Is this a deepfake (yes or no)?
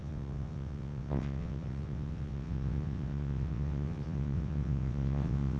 yes